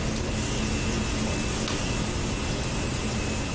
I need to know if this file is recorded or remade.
recorded